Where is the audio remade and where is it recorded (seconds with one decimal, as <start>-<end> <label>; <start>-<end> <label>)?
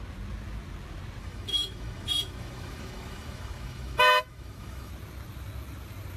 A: 0.0-1.2 recorded; 1.2-4.9 remade; 4.9-6.2 recorded